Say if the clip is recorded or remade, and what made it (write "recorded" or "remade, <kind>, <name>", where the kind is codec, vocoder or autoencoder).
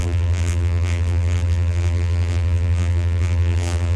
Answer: remade, vocoder, BigVGAN v2